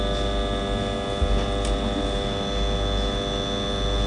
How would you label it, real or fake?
real